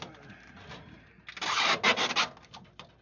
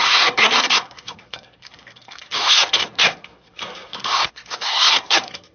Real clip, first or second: first